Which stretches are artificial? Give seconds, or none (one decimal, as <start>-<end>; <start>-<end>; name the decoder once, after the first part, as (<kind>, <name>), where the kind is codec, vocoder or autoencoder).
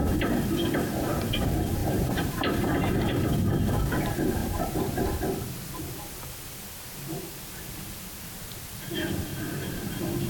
1.8-2.7 (vocoder, BigVGAN v2); 4.4-5.0; 9.3-9.9